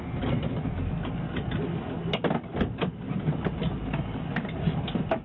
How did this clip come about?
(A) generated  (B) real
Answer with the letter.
B